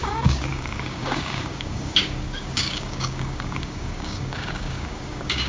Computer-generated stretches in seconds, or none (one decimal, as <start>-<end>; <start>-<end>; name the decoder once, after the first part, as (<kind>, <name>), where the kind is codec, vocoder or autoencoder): 0.0-5.5 (codec, DAC)